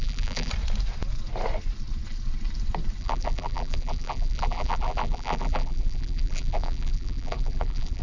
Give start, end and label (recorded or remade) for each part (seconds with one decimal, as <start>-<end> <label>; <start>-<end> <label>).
0.0-0.5 remade; 0.5-3.0 recorded; 3.0-8.0 remade